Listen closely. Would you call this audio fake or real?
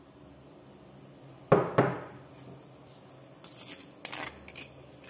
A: real